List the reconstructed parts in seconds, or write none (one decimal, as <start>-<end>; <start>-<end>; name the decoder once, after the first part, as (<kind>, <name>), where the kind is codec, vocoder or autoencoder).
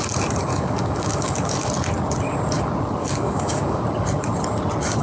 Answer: 0.5-1.7 (codec, DAC); 3.0-3.8